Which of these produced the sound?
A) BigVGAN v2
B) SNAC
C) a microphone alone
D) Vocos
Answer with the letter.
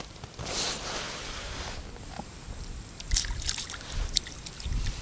C